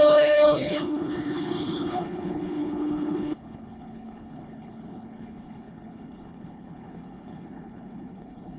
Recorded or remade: remade